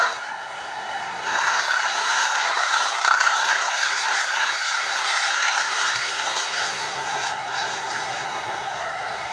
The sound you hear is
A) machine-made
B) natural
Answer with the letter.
A